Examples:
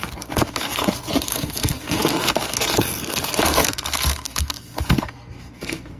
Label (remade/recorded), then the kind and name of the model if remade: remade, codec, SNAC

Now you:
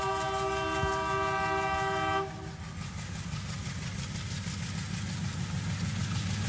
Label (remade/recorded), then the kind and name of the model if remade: recorded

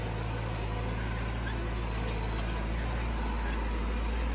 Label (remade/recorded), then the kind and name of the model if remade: recorded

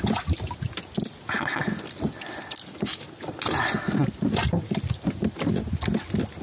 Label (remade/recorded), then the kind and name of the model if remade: recorded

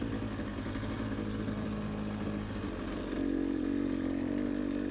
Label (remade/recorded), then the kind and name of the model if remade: recorded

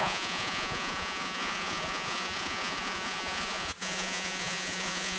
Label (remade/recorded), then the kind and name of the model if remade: remade, vocoder, Vocos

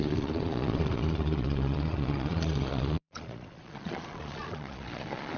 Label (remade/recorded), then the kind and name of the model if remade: remade, vocoder, Vocos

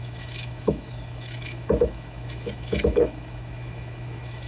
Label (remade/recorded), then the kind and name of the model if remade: remade, autoencoder, DAC-VAE